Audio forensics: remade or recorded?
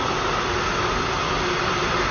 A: recorded